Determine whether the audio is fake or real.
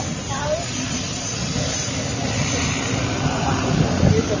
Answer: real